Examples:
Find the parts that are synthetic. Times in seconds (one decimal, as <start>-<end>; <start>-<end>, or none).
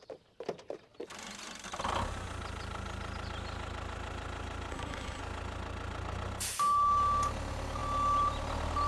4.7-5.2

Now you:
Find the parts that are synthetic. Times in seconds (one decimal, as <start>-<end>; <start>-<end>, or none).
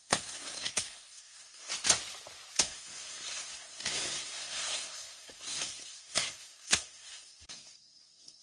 0.0-1.7; 2.5-8.4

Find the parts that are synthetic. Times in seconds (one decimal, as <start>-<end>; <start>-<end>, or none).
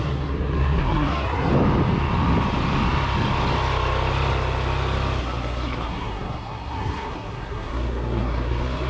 0.0-1.5; 5.2-8.9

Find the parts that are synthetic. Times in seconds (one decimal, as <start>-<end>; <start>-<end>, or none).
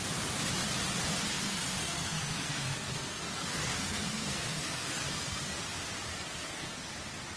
1.3-5.6; 6.1-6.9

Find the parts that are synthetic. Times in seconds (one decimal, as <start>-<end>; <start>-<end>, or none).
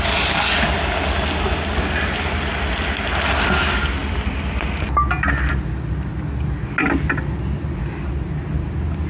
none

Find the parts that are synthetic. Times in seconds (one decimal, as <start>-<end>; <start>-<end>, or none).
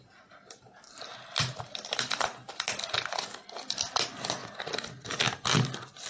none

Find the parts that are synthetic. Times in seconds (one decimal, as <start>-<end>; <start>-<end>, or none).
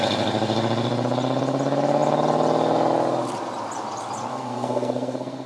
4.3-5.5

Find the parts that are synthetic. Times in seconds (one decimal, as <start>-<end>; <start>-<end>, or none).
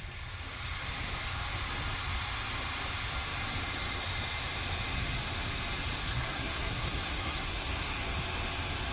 6.0-8.0